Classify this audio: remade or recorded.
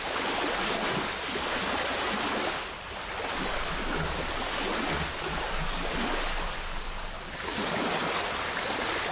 recorded